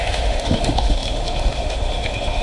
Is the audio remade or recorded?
remade